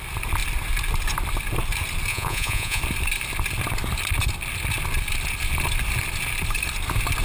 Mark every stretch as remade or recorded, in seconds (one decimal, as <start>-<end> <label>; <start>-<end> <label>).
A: 0.0-2.1 recorded; 2.1-2.8 remade; 2.8-7.2 recorded